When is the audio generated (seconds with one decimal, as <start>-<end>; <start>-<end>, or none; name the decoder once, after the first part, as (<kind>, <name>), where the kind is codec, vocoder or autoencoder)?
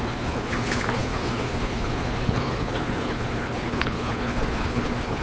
0.0-5.2 (codec, HILCodec)